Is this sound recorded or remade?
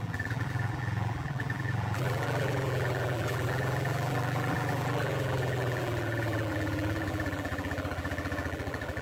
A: remade